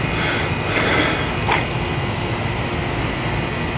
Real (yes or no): yes